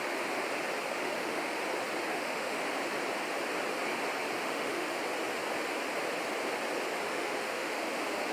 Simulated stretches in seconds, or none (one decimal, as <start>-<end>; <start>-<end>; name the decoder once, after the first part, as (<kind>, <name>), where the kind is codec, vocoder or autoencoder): 0.9-1.6 (autoencoder, DAC-VAE); 2.1-2.6; 4.4-5.0; 7.0-8.3